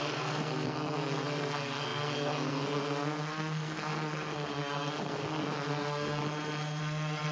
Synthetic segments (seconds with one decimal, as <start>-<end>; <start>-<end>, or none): 0.0-6.2; 6.8-7.3